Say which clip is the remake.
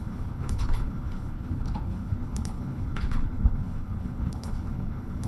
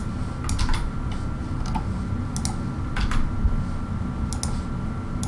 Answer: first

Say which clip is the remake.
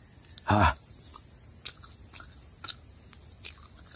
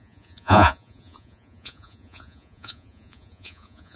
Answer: second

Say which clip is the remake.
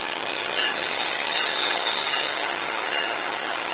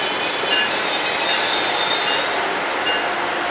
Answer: first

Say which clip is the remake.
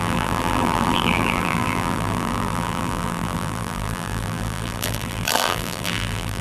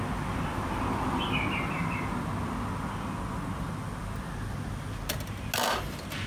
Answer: first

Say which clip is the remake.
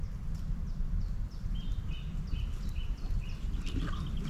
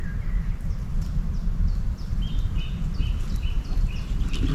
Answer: first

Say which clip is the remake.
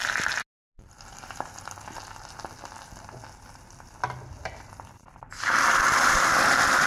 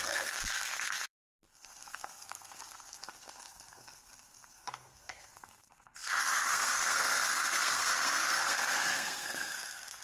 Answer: second